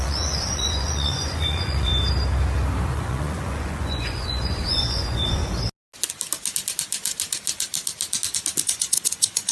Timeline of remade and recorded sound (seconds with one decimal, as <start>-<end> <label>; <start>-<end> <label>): 0.0-1.9 remade; 1.9-2.9 recorded; 2.9-5.4 remade; 5.4-8.6 recorded; 8.6-9.5 remade